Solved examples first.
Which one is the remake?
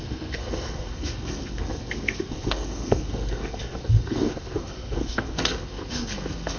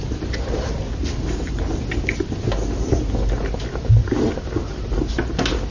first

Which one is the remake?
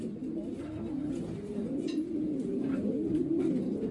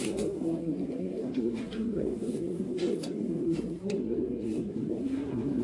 second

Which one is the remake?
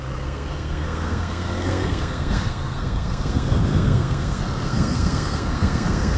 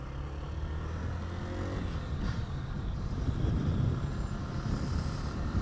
first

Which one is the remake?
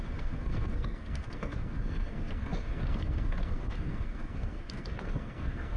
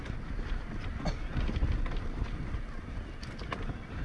first